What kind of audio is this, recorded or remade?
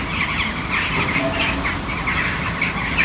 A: recorded